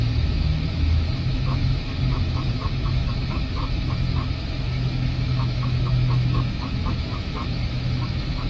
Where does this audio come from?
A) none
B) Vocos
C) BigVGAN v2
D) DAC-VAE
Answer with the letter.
D